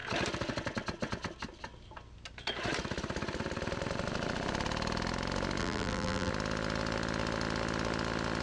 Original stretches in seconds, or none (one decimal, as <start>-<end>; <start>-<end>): 0.0-5.6; 6.3-8.4